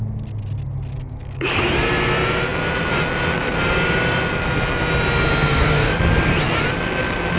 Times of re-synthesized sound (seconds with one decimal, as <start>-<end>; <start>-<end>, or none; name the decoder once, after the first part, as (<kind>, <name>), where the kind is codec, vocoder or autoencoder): 0.9-1.6 (codec, DAC); 5.5-6.0